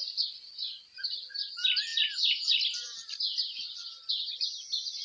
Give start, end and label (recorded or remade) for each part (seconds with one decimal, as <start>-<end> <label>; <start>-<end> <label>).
0.0-5.0 recorded